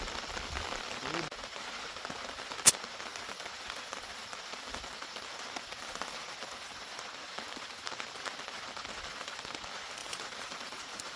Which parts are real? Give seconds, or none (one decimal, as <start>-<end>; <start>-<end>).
0.0-3.1; 6.9-10.0